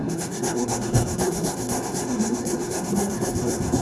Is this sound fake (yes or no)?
yes